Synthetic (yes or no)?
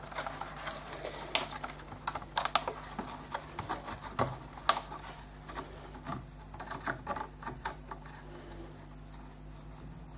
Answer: no